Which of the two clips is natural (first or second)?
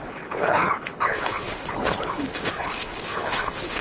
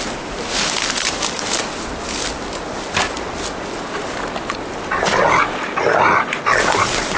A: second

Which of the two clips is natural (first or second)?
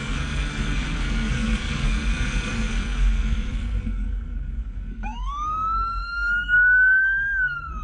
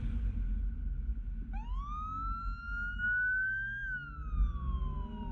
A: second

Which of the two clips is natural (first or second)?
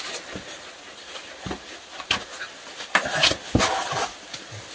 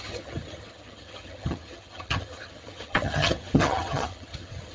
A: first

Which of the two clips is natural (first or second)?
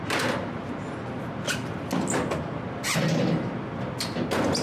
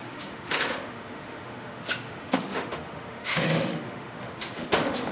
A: first